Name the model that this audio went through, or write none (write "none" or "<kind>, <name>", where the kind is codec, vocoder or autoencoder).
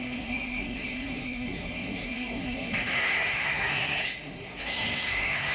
codec, SNAC